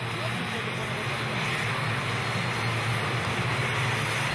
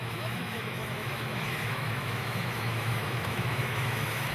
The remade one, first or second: second